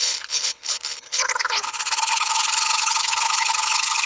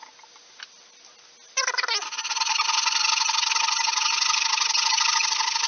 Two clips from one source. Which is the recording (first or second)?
second